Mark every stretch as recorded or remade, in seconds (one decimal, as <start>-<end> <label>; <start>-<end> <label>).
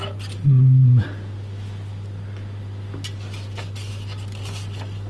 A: 0.0-5.1 recorded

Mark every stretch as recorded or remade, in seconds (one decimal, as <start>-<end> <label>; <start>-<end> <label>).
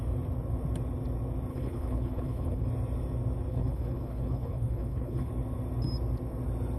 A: 0.0-1.5 recorded; 1.5-2.7 remade; 2.7-3.5 recorded; 3.5-5.3 remade; 5.3-6.8 recorded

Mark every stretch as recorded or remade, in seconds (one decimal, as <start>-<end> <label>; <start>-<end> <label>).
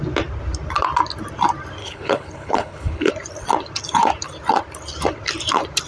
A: 0.0-1.8 recorded; 1.8-3.1 remade; 3.1-5.9 recorded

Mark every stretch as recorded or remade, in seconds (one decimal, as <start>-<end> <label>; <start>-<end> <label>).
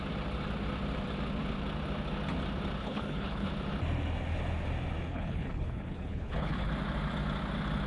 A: 0.0-2.8 recorded; 2.8-3.5 remade; 3.5-5.1 recorded; 5.1-6.7 remade; 6.7-7.9 recorded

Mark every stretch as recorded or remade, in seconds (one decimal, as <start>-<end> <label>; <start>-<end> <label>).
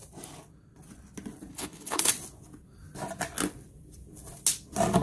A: 0.0-1.5 recorded; 1.5-2.1 remade; 2.1-5.0 recorded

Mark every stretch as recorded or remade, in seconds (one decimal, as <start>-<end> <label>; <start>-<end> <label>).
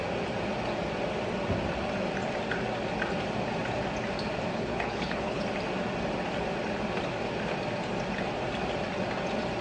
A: 0.0-4.5 recorded; 4.5-5.4 remade; 5.4-9.6 recorded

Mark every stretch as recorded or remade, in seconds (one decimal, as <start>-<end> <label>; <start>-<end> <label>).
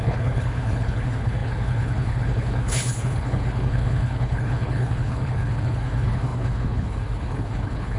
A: 0.0-8.0 remade